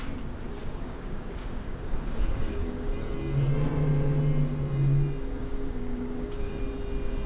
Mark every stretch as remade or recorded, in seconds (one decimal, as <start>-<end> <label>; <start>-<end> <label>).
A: 0.0-0.6 recorded; 0.6-2.9 remade; 2.9-5.4 recorded; 5.4-6.5 remade; 6.5-7.3 recorded